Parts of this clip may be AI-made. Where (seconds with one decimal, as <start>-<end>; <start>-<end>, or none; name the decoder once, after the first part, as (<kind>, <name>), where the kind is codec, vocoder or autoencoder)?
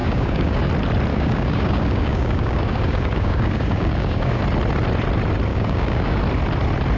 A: 0.0-0.7 (codec, DAC); 1.1-4.4; 5.5-6.2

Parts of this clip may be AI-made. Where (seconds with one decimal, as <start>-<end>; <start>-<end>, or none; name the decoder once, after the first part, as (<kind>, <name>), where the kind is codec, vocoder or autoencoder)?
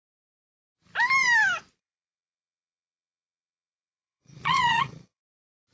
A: 1.8-5.2 (vocoder, Vocos)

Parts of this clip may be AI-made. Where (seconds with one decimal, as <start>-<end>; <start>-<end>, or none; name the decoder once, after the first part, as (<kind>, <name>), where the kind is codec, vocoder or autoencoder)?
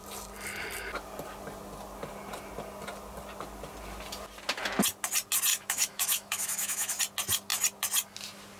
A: 5.5-7.0 (autoencoder, DAC-VAE)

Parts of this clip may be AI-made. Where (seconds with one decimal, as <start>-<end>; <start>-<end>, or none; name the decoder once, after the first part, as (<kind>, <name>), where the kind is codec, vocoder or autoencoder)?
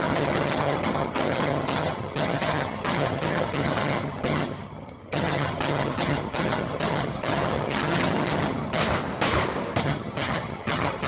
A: 0.0-8.8 (vocoder, HiFi-GAN); 9.8-11.1